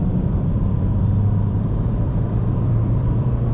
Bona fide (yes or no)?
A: no